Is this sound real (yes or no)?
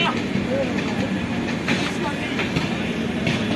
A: yes